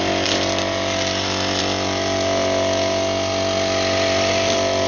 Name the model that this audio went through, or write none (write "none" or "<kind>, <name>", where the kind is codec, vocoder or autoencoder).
none